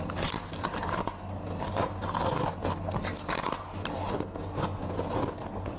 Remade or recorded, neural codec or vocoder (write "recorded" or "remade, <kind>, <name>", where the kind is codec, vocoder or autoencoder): recorded